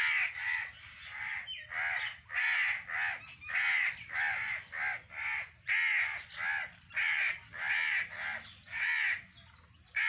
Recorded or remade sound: recorded